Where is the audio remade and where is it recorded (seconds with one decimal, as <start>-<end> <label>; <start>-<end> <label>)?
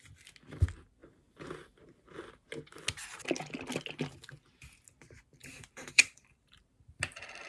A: 0.0-5.4 recorded; 5.4-6.6 remade; 6.6-7.5 recorded